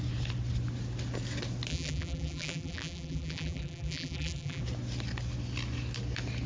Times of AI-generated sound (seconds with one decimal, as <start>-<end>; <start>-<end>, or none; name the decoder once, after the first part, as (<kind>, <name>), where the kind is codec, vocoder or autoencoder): 1.7-4.6 (vocoder, BigVGAN v2)